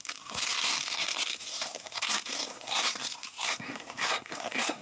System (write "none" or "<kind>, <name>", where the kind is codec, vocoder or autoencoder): codec, SNAC